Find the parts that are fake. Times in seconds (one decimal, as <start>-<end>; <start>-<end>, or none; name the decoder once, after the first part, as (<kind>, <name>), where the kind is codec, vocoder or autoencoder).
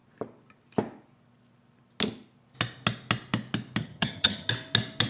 3.8-4.5 (vocoder, HiFi-GAN)